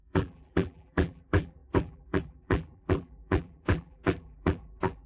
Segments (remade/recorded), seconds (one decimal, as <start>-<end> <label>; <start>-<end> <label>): 0.0-5.1 remade